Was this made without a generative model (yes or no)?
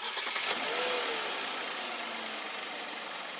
yes